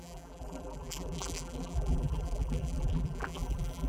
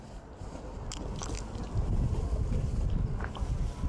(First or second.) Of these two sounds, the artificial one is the first